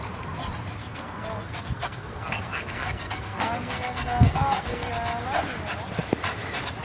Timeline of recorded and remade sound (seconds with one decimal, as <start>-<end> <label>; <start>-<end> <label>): 0.0-0.8 recorded; 0.8-4.9 remade; 4.9-6.8 recorded